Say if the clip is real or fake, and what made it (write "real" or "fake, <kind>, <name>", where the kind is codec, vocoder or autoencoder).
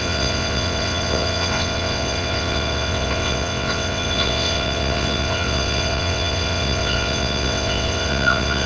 fake, vocoder, WaveNeXt